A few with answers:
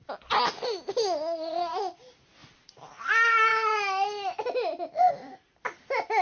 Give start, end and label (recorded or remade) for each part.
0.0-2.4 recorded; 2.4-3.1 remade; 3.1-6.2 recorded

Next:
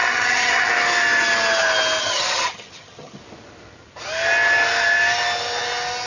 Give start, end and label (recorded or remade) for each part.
0.0-0.7 remade; 0.7-2.0 recorded; 2.0-3.2 remade; 3.2-6.1 recorded

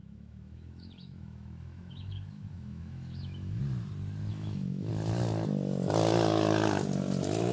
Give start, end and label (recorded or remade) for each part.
0.0-3.6 remade; 3.6-4.3 recorded; 4.3-4.9 remade; 4.9-7.5 recorded

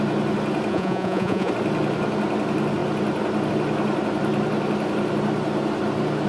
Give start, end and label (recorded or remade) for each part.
0.0-0.7 recorded; 0.7-1.5 remade; 1.5-6.3 recorded

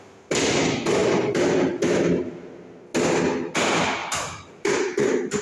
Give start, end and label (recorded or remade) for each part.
0.0-4.0 recorded; 4.0-5.4 remade